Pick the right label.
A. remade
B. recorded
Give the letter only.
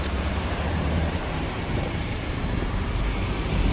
A